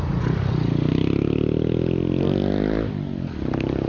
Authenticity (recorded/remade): recorded